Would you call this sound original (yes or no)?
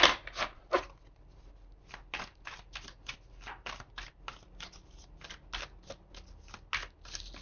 yes